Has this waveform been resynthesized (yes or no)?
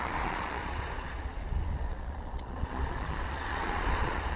yes